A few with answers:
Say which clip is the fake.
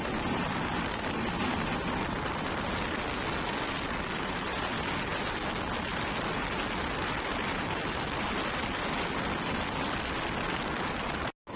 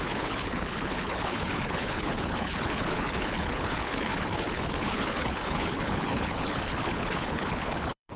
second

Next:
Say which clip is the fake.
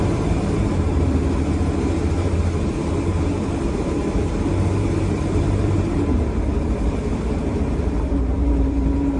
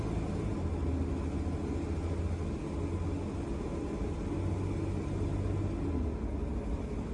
first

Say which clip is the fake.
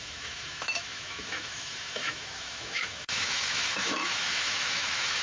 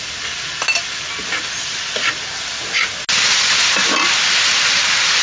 first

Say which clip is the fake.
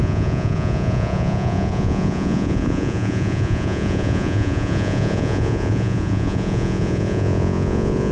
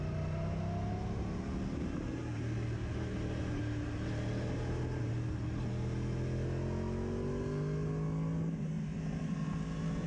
first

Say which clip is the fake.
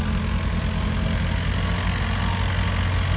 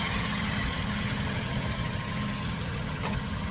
second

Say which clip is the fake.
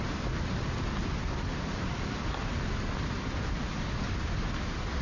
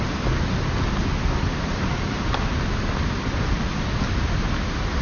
first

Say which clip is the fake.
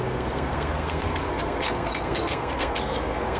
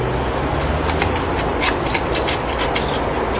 first